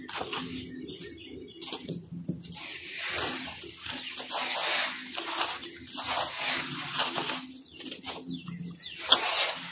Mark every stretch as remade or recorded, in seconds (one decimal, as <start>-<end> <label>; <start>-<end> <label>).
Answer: 0.0-9.7 recorded